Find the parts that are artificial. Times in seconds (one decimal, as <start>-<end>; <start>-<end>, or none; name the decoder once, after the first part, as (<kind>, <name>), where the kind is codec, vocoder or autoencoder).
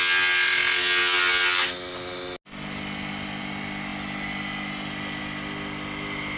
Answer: none